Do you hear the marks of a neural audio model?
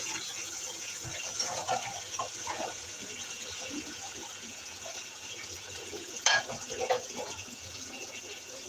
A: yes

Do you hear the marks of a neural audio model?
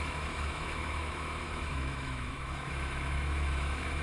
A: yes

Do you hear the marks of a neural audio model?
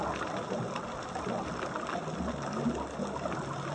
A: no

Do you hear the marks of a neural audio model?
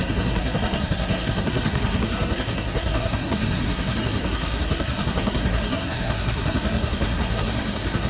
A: yes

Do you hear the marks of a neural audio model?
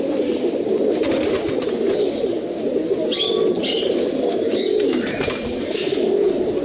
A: no